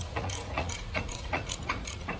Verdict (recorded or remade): remade